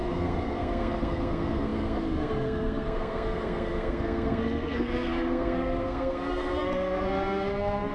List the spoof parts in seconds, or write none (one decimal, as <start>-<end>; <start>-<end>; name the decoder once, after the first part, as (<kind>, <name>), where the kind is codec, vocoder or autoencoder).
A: 0.0-7.9 (codec, SNAC)